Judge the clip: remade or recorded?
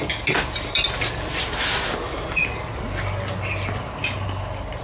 recorded